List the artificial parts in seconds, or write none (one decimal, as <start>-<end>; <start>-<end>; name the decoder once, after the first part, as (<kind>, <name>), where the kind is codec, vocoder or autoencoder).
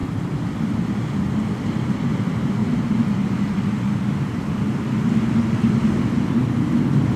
0.0-0.9 (vocoder, BigVGAN v2); 2.6-5.4